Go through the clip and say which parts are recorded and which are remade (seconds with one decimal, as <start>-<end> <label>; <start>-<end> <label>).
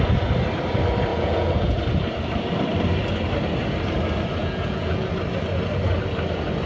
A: 0.0-1.1 recorded; 1.1-1.8 remade; 1.8-4.4 recorded; 4.4-5.1 remade; 5.1-6.7 recorded